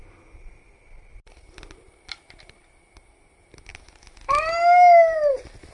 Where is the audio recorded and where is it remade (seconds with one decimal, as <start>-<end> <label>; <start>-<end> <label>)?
0.0-5.7 recorded